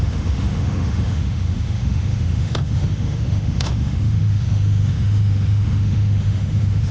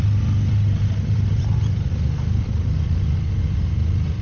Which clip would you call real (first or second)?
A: second